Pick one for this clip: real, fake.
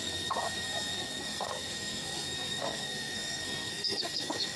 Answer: fake